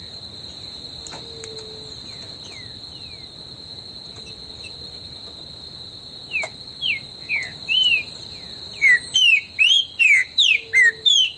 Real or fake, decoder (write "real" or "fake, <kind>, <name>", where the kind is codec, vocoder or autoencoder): real